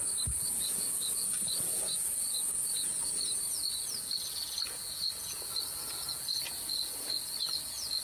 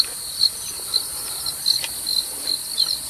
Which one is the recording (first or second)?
second